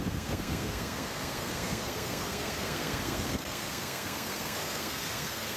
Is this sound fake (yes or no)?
yes